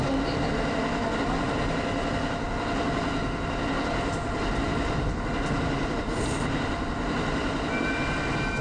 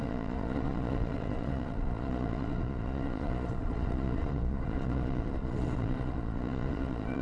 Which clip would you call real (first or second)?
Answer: first